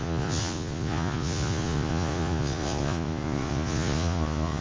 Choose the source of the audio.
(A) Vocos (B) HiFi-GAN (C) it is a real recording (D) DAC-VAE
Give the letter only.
A